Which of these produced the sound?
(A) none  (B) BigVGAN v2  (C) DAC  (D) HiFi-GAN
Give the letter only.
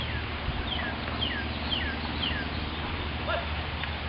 A